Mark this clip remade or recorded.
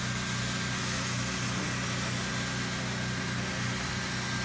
recorded